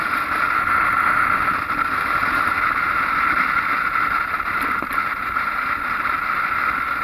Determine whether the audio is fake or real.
real